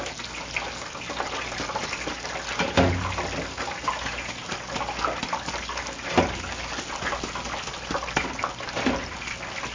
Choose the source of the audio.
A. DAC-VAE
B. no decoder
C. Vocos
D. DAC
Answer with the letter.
B